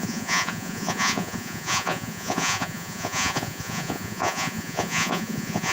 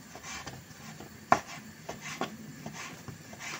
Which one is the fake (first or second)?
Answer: first